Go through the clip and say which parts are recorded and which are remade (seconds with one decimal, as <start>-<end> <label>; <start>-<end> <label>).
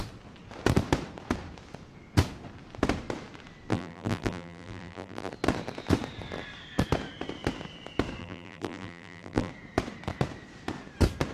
0.0-3.7 recorded; 3.7-5.3 remade; 5.3-8.2 recorded; 8.2-9.5 remade; 9.5-11.3 recorded